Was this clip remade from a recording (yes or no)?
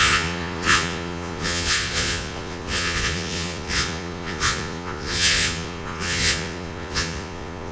yes